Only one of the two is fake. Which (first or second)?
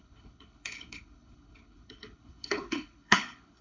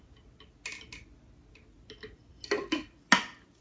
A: first